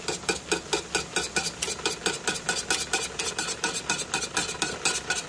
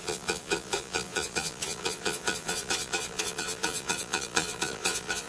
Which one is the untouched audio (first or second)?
first